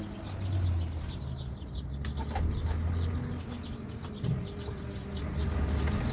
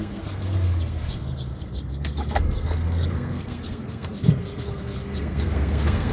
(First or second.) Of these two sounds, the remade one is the second